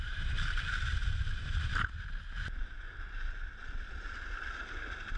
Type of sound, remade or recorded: recorded